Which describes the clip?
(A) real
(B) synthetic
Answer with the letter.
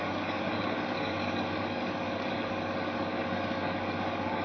B